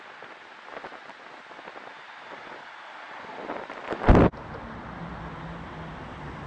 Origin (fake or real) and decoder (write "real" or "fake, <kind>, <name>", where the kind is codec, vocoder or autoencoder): real